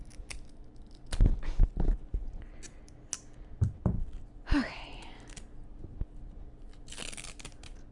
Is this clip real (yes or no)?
yes